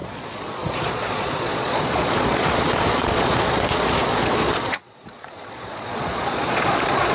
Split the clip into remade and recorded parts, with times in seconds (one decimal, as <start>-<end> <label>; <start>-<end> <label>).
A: 0.0-7.1 remade